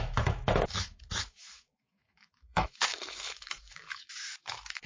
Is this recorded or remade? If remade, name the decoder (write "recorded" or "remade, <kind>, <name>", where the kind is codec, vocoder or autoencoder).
remade, autoencoder, DAC-VAE